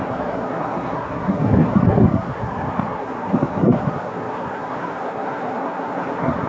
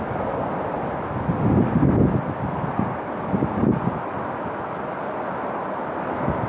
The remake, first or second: first